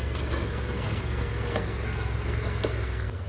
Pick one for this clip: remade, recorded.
remade